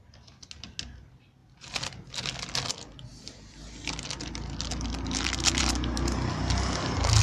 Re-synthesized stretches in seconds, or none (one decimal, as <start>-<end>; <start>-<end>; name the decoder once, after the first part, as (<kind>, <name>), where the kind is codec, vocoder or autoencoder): none